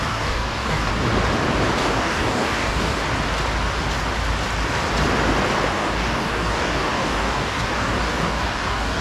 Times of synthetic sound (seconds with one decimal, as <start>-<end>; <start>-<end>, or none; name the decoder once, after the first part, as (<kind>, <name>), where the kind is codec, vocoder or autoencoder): 0.0-0.9 (codec, DAC); 1.8-3.0; 5.7-9.0